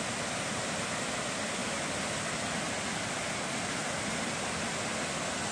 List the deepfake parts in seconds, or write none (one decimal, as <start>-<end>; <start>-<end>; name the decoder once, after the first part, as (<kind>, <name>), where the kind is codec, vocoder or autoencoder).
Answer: none